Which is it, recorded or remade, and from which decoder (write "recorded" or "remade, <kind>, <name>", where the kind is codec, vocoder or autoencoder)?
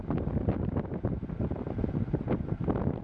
recorded